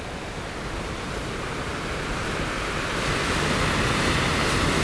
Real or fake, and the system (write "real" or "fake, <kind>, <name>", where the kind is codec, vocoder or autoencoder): real